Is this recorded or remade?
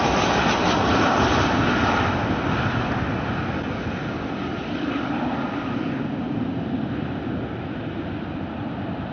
recorded